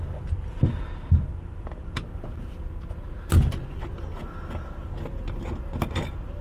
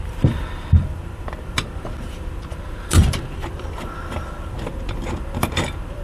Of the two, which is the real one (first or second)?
first